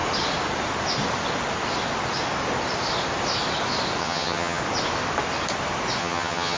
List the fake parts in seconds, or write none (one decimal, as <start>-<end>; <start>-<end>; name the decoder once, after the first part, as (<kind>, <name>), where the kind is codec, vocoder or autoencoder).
4.0-4.6 (vocoder, HiFi-GAN); 6.0-6.6